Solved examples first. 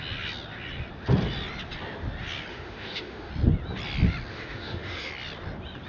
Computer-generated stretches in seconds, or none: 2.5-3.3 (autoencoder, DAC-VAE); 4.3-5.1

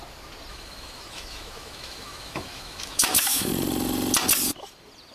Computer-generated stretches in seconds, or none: 0.5-3.5 (autoencoder, DAC-VAE)

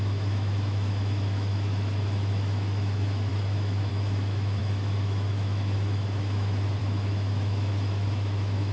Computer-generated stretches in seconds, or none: 0.0-8.7 (autoencoder, DAC-VAE)

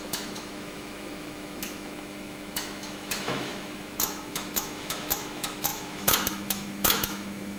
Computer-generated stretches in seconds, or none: 0.0-7.6 (autoencoder, DAC-VAE)

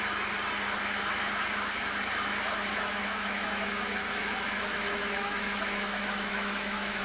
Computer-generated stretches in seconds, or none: 2.7-7.0 (autoencoder, DAC-VAE)